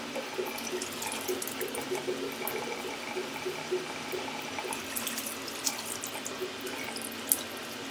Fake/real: real